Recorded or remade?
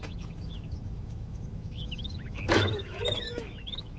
remade